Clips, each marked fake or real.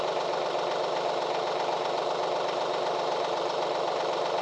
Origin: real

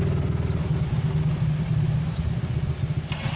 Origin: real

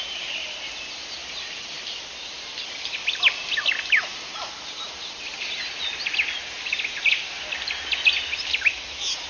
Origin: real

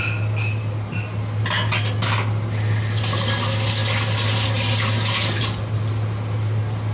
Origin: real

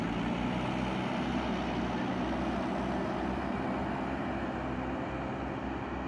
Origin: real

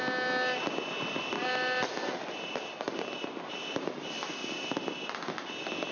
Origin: real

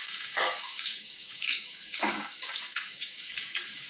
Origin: fake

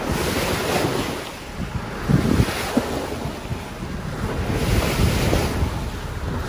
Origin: real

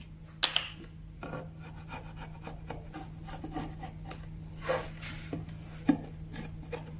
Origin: real